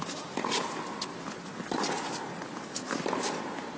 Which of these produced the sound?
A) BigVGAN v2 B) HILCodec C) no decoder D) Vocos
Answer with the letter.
C